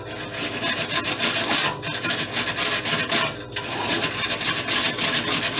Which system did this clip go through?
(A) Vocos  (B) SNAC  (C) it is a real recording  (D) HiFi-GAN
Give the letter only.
C